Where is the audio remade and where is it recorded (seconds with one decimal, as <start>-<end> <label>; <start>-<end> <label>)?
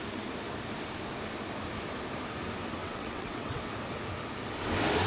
0.0-2.8 recorded; 2.8-3.7 remade; 3.7-5.1 recorded